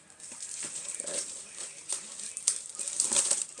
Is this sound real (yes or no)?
no